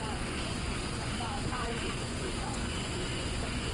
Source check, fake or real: fake